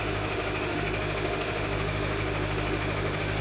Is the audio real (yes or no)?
no